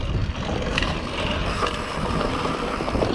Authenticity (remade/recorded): recorded